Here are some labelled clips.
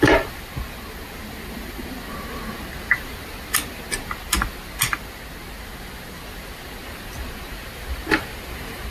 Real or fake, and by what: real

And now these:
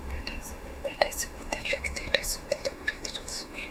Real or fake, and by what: fake, autoencoder, DAC-VAE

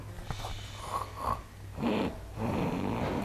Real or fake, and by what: real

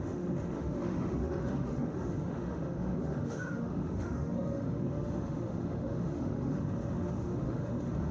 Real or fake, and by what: fake, autoencoder, DAC-VAE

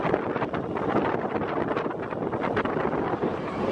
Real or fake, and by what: real